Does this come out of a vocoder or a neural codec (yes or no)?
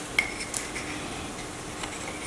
no